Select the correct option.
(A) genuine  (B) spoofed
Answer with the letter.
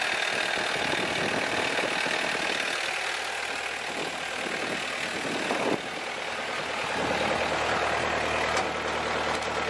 A